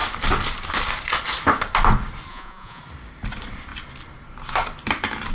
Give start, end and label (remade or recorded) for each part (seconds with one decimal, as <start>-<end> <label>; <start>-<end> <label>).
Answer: 0.0-2.3 recorded; 2.3-2.8 remade; 2.8-5.3 recorded